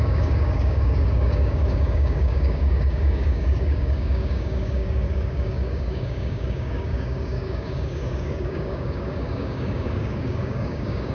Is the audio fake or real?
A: fake